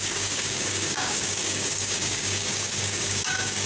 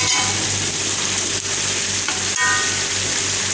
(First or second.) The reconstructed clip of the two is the first